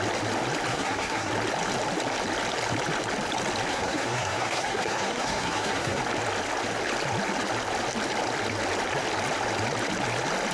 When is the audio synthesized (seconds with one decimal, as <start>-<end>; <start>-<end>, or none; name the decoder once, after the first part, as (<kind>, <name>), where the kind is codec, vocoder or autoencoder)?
0.7-1.3 (codec, SNAC); 3.7-6.0